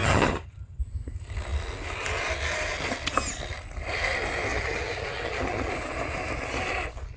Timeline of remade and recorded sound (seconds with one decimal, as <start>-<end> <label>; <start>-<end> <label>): 0.0-0.8 remade; 0.8-4.5 recorded; 4.5-5.7 remade; 5.7-7.2 recorded